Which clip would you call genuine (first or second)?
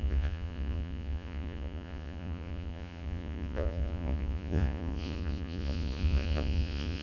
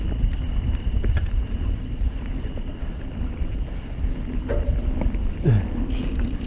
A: second